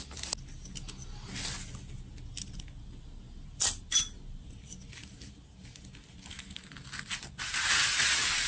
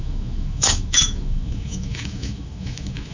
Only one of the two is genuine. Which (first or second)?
first